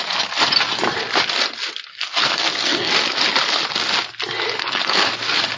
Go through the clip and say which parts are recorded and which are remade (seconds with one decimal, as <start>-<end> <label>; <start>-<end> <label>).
0.0-1.9 recorded; 1.9-2.9 remade; 2.9-4.6 recorded; 4.6-5.1 remade; 5.1-5.6 recorded